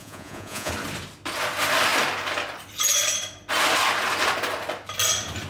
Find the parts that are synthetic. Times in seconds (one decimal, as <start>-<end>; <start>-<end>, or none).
0.0-0.7

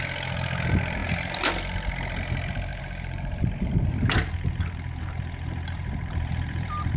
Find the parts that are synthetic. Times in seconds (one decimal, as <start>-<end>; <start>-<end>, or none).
2.7-7.0

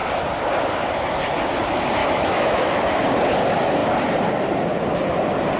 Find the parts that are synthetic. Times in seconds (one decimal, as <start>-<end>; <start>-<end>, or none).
2.0-3.0